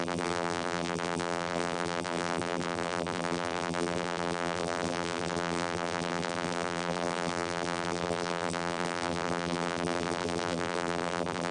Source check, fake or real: fake